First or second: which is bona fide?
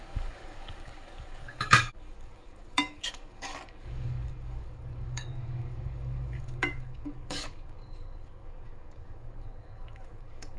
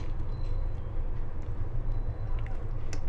second